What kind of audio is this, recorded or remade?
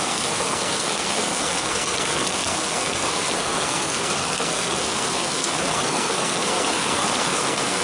remade